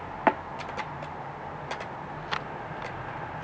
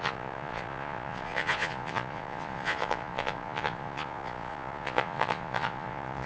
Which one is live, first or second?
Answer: first